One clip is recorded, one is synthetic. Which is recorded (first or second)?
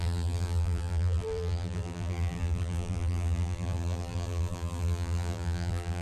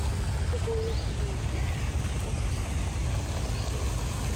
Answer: second